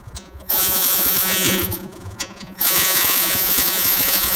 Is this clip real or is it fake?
fake